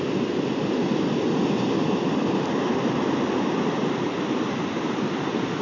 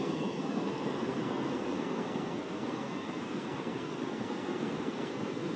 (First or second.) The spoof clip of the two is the second